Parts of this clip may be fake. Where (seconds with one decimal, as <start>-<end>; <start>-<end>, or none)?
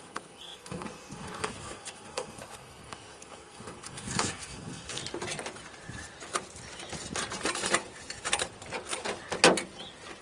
0.0-5.0